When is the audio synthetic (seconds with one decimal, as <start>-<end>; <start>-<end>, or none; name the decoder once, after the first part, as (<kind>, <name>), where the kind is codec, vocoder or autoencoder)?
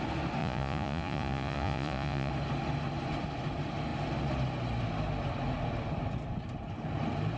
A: 0.4-2.3 (vocoder, Vocos)